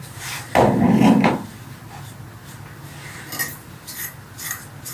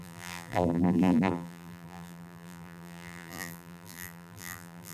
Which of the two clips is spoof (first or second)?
second